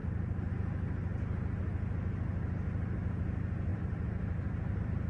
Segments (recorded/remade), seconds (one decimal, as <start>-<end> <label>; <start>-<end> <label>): 0.0-0.5 remade; 0.5-3.7 recorded; 3.7-5.1 remade